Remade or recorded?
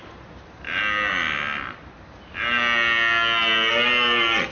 recorded